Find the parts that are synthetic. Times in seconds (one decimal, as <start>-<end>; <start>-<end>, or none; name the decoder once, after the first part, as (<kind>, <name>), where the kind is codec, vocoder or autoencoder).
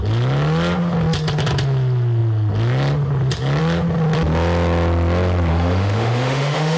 5.5-6.8 (autoencoder, DAC-VAE)